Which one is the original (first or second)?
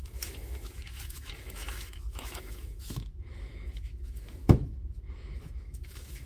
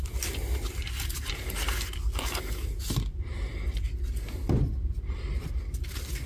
second